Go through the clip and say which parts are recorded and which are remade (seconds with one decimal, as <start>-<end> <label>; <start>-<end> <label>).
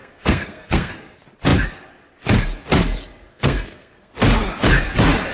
0.0-0.9 remade; 0.9-3.3 recorded; 3.3-4.1 remade; 4.1-5.3 recorded